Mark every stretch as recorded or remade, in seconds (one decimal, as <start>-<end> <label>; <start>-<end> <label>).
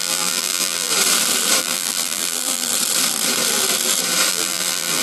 0.0-0.9 remade; 0.9-1.6 recorded; 1.6-2.7 remade; 2.7-4.3 recorded; 4.3-5.0 remade